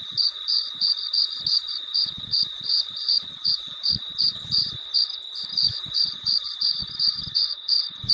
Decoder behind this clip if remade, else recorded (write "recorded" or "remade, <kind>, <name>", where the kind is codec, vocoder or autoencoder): remade, vocoder, BigVGAN v2